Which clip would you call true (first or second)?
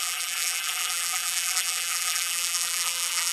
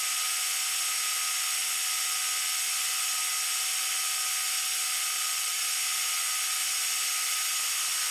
second